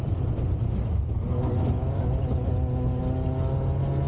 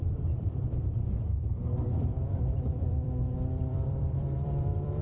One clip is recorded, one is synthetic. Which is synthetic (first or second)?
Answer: second